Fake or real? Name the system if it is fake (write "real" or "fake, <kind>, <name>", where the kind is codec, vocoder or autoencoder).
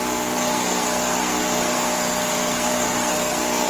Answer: fake, codec, SNAC